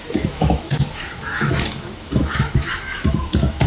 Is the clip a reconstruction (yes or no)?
yes